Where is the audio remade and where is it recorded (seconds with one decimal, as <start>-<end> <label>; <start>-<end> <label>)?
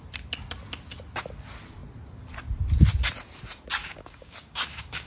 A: 0.0-3.8 recorded; 3.8-5.1 remade